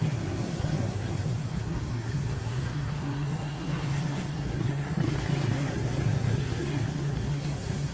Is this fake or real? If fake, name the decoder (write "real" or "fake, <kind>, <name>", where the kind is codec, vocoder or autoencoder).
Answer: fake, codec, SNAC